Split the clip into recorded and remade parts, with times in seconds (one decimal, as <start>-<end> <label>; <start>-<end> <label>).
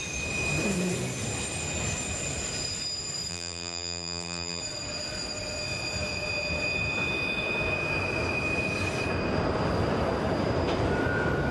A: 0.0-3.3 recorded; 3.3-4.6 remade; 4.6-11.5 recorded